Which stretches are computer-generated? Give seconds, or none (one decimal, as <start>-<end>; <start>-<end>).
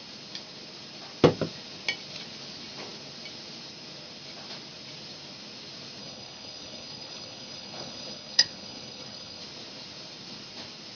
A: 6.0-9.4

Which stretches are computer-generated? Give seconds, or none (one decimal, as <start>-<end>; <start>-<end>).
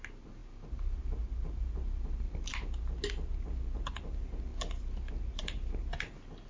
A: none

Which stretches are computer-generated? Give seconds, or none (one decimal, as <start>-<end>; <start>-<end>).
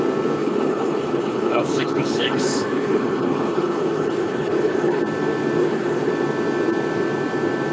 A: 0.4-5.0; 5.6-6.1